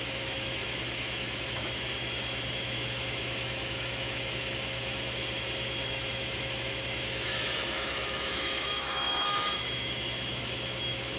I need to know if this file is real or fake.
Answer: fake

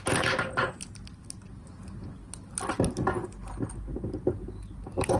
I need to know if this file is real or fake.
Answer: real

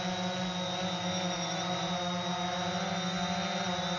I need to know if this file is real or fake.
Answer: real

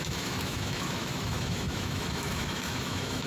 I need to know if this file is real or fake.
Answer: fake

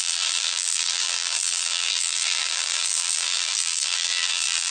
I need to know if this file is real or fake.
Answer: fake